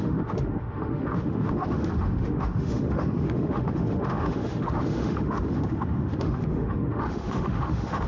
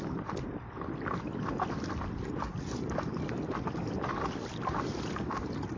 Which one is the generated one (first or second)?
first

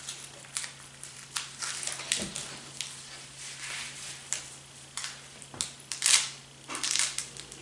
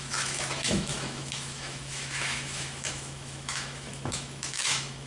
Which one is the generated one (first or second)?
second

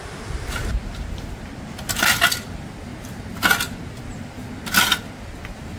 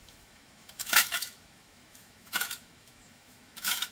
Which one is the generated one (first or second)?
second